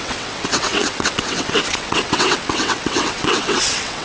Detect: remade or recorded remade